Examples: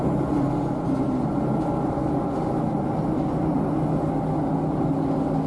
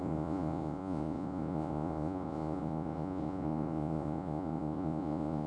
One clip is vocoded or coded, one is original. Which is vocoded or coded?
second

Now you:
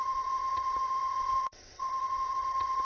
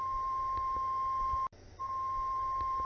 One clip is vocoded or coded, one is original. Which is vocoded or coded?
first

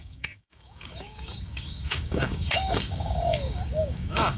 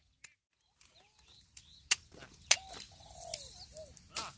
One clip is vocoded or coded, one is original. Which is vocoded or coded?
first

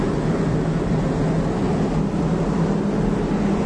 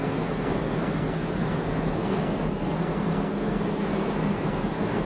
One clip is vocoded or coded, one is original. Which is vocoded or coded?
second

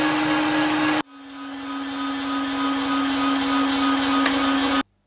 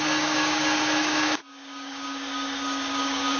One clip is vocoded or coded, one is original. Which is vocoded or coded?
second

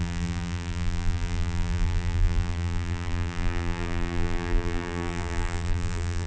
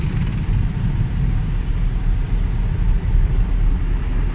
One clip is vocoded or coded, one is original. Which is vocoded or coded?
first